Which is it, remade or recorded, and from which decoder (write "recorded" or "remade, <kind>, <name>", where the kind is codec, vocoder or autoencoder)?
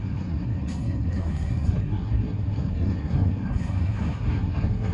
remade, codec, SNAC